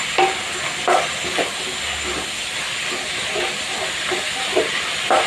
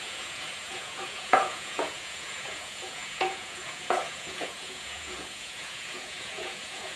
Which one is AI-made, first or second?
second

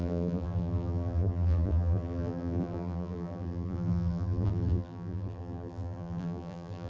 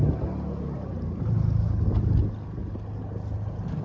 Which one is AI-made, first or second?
first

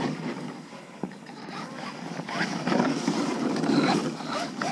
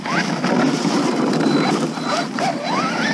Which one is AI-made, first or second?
first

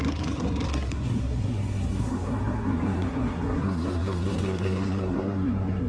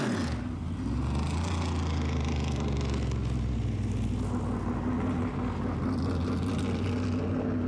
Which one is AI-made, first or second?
first